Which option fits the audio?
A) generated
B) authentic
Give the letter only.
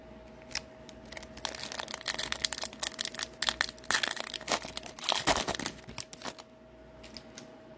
B